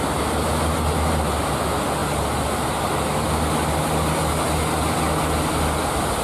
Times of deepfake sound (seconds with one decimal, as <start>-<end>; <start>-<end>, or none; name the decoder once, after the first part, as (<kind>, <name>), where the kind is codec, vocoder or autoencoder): none